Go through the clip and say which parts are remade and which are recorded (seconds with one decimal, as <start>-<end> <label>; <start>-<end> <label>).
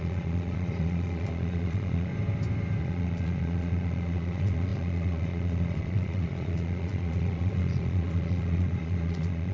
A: 0.0-2.1 remade; 2.1-2.8 recorded; 2.8-9.5 remade